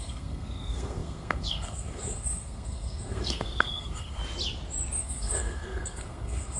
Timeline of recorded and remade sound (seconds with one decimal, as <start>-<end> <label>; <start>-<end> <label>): 0.0-4.2 remade; 4.2-5.0 recorded; 5.0-6.6 remade

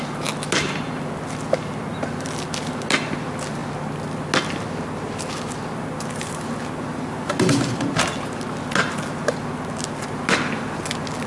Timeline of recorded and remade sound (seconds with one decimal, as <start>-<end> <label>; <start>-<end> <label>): 0.0-11.3 recorded